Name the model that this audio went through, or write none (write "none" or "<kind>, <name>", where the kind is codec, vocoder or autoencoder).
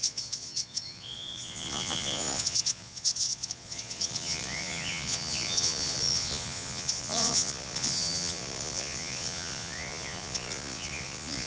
vocoder, Vocos